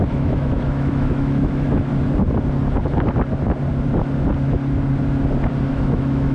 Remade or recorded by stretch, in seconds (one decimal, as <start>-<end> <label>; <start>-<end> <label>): 0.0-1.9 remade; 1.9-5.7 recorded; 5.7-6.3 remade